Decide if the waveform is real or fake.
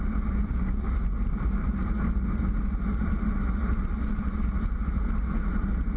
real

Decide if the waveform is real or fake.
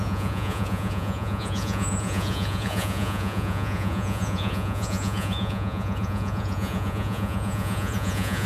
fake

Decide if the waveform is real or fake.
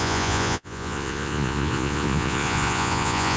fake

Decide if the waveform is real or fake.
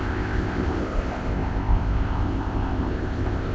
fake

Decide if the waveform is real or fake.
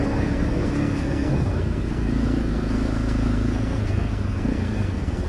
fake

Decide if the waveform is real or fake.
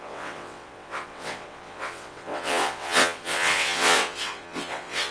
fake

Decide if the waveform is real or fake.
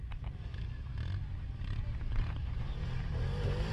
real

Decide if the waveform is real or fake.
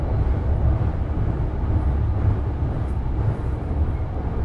real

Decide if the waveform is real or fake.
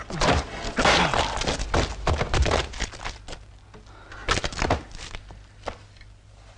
real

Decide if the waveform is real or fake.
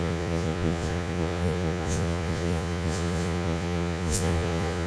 fake